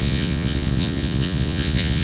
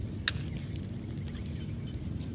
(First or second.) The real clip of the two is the second